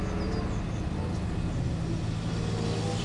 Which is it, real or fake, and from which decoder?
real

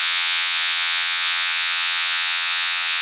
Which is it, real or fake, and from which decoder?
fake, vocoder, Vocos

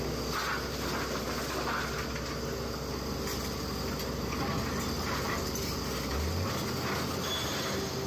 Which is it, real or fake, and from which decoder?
real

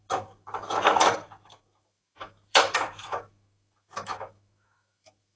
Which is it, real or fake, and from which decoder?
fake, autoencoder, DAC-VAE